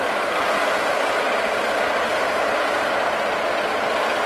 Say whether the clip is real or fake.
real